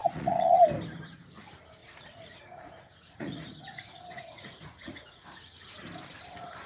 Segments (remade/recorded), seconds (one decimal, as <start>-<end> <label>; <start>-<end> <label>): 0.0-0.6 remade; 0.6-1.8 recorded; 1.8-5.7 remade; 5.7-6.7 recorded